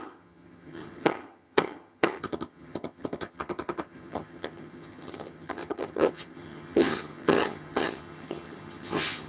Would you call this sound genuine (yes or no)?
no